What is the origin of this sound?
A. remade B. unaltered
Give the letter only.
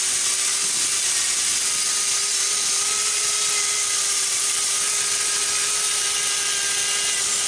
B